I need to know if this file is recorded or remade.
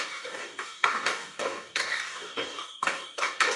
remade